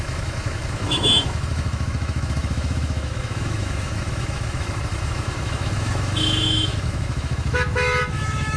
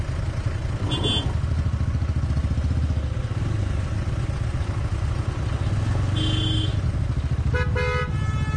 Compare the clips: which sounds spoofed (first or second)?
first